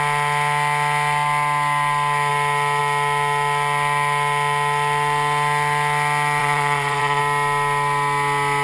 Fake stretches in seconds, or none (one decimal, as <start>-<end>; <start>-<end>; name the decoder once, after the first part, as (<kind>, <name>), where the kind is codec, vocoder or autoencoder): 6.4-7.2 (vocoder, Vocos)